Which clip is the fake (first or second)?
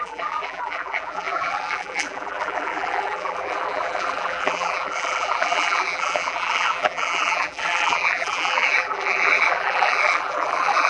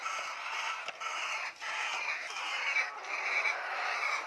first